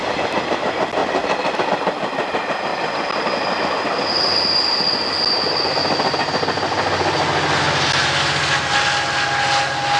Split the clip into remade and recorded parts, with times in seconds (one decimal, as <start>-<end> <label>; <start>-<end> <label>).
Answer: 0.0-10.0 recorded